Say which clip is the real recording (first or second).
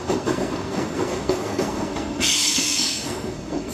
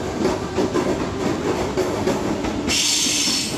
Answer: second